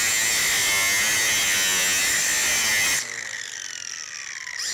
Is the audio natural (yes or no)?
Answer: yes